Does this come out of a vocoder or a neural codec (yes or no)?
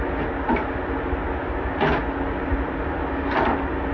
no